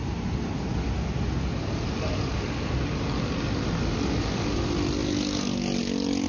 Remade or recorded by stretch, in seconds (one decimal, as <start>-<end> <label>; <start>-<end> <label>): 0.0-6.3 recorded